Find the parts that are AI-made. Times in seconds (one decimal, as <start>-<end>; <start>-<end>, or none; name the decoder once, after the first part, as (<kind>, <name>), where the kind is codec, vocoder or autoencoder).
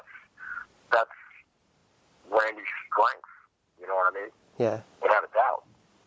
none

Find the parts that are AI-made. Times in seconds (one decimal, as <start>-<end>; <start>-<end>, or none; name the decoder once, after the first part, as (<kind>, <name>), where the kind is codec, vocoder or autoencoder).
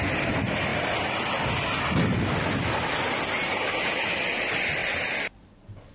none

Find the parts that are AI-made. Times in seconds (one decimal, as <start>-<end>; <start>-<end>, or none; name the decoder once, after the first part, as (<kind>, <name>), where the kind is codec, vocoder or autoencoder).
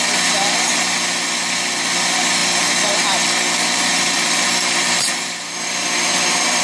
2.4-6.6 (vocoder, BigVGAN v2)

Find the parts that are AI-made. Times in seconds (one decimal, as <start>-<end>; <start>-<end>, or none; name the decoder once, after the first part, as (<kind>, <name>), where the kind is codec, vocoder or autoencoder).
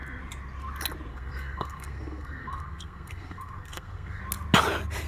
1.1-4.2 (codec, SNAC)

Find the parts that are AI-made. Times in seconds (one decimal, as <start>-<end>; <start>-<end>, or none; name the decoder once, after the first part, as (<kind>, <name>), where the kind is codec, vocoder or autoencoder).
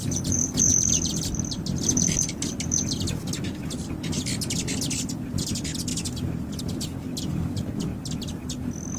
none